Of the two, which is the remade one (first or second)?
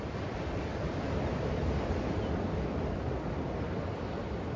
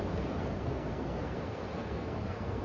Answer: second